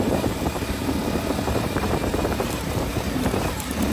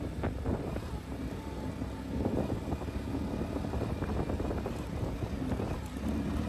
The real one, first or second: second